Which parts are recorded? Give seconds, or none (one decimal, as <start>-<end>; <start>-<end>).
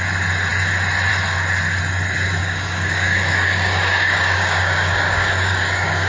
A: 0.0-2.4